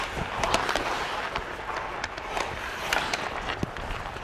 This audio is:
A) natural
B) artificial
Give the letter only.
A